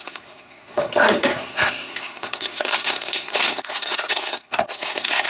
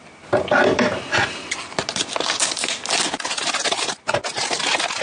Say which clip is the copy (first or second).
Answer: first